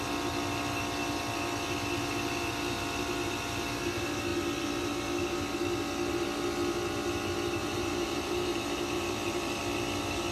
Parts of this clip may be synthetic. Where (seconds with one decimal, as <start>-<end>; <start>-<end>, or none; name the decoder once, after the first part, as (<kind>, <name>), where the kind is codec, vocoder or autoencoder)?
7.6-9.6 (vocoder, BigVGAN v2)